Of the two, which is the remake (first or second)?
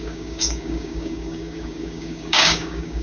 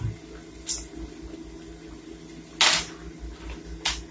first